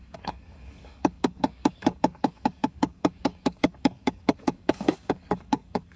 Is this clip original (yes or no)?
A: no